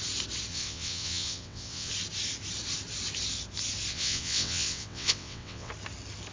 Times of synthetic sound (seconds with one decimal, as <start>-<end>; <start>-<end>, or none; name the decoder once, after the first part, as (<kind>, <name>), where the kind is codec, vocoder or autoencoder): 0.5-1.9 (vocoder, WaveNeXt); 3.9-5.7